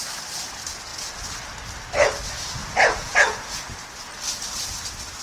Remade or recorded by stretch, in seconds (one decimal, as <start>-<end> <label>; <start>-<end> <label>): 0.0-2.6 recorded; 2.6-3.7 remade; 3.7-5.2 recorded